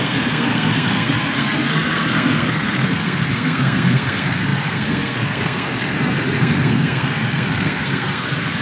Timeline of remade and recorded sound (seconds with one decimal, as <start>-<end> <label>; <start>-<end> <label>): 0.0-8.6 remade

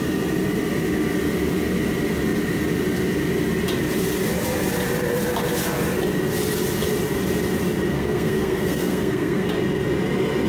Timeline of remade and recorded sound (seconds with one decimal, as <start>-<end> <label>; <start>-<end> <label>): 0.0-7.9 recorded; 7.9-9.5 remade; 9.5-10.5 recorded